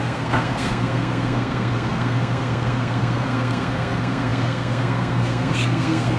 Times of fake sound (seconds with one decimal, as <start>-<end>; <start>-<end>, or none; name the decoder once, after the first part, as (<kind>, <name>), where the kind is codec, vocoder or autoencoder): 0.0-6.2 (codec, SNAC)